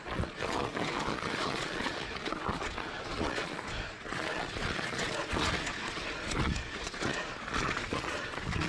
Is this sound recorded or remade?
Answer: remade